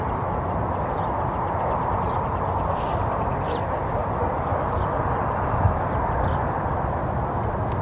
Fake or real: fake